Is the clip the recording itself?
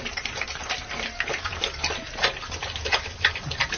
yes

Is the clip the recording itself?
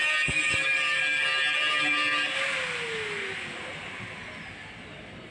yes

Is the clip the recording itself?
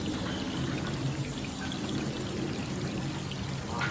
yes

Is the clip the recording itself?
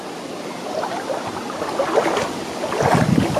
yes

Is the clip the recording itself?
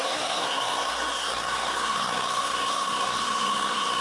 no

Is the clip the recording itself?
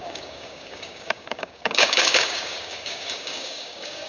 no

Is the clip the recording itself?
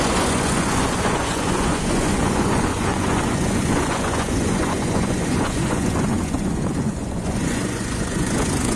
no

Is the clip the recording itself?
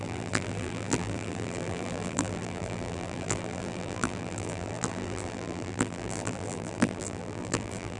no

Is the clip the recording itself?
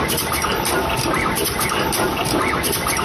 no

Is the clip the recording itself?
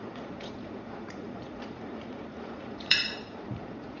no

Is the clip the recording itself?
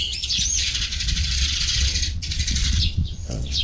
no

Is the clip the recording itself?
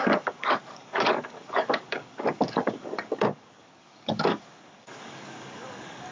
no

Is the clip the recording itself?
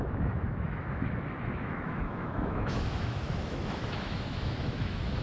no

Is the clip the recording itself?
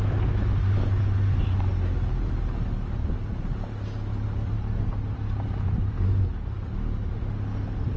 yes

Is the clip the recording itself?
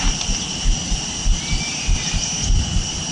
yes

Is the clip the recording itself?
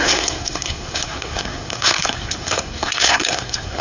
no